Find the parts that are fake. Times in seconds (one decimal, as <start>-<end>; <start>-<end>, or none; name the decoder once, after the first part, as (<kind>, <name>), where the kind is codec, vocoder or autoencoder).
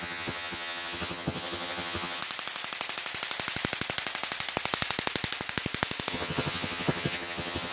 0.0-2.2 (vocoder, HiFi-GAN); 6.1-7.7